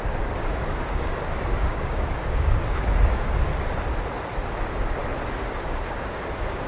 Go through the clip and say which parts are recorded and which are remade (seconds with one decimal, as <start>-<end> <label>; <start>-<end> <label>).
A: 0.0-3.5 remade; 3.5-4.6 recorded; 4.6-5.0 remade; 5.0-5.6 recorded; 5.6-6.7 remade

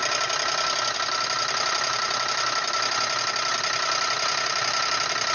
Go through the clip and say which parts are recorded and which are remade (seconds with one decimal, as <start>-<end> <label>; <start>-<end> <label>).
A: 0.0-5.3 recorded

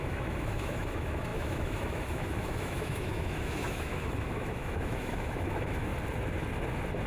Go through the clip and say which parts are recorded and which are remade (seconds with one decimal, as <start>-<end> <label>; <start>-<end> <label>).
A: 0.0-5.9 remade; 5.9-7.1 recorded

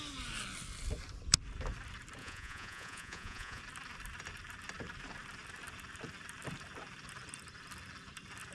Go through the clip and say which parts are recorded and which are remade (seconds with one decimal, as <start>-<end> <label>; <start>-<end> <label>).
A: 0.0-2.2 recorded; 2.2-3.6 remade; 3.6-8.5 recorded

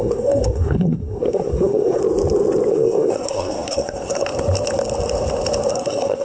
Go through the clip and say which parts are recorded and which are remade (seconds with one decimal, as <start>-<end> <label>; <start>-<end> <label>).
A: 0.0-2.0 remade; 2.0-2.7 recorded; 2.7-4.3 remade; 4.3-5.7 recorded; 5.7-6.2 remade

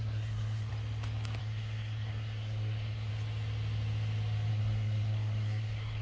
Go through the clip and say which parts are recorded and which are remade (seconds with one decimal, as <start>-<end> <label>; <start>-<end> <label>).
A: 0.0-0.7 remade; 0.7-1.4 recorded; 1.4-3.1 remade; 3.1-4.5 recorded; 4.5-6.0 remade

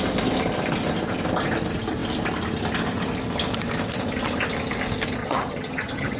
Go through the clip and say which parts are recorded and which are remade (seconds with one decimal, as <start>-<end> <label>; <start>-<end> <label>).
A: 0.0-5.2 recorded; 5.2-6.2 remade